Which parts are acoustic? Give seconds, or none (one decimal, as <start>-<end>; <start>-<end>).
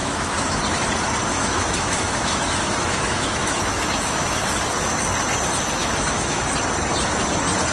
0.6-1.3; 4.8-5.8; 6.4-7.7